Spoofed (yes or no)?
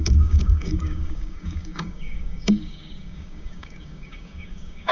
yes